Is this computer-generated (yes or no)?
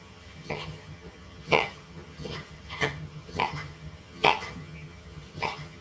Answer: yes